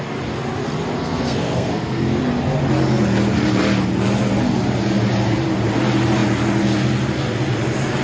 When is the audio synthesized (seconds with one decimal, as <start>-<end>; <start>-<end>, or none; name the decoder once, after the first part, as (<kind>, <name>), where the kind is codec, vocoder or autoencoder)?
0.9-2.2 (codec, SNAC)